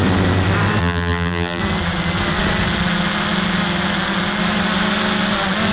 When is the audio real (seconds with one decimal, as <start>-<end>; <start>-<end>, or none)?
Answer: 0.0-0.8; 1.6-5.7